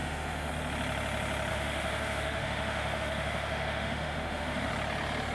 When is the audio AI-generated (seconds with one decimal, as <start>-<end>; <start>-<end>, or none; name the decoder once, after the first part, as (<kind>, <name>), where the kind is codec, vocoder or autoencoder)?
0.0-0.5 (autoencoder, DAC-VAE); 1.5-4.7